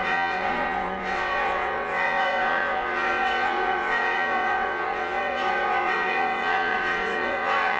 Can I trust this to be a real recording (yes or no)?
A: no